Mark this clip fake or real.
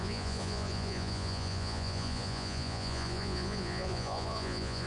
fake